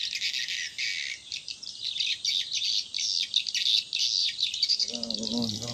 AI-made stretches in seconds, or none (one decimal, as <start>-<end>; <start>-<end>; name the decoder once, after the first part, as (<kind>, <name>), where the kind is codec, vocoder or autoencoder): 4.2-4.9 (vocoder, BigVGAN v2)